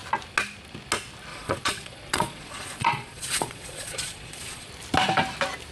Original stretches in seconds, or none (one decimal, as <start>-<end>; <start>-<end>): 0.0-1.3; 4.7-5.7